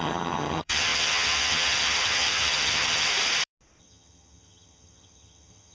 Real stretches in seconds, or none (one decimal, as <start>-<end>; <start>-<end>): 3.1-3.8